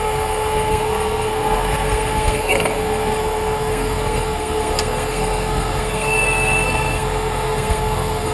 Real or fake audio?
fake